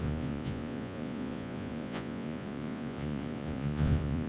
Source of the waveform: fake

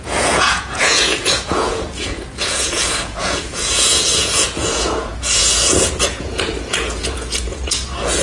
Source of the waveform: fake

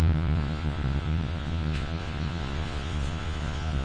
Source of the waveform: fake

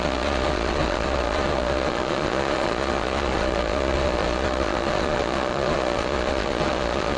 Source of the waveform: fake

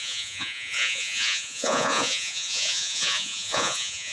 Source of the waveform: fake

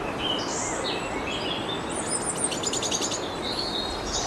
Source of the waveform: real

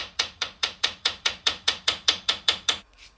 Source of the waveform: fake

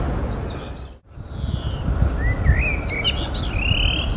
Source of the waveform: real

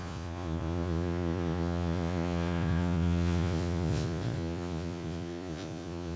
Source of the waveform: fake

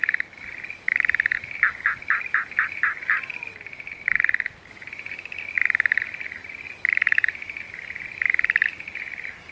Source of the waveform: real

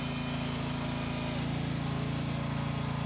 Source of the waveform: real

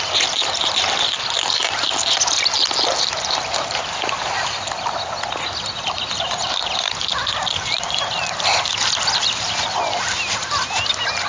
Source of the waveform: real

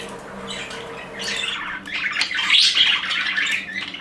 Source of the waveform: real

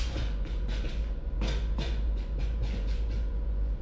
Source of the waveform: fake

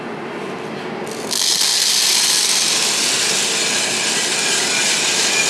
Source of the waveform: real